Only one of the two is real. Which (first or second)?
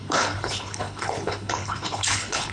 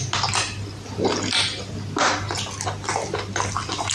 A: second